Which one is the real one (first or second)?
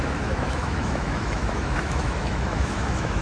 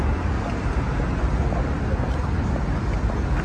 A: second